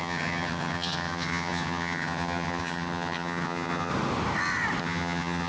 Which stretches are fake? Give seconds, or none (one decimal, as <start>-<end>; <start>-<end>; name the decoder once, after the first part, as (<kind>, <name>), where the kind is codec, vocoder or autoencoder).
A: 0.0-3.9 (vocoder, HiFi-GAN); 4.8-5.5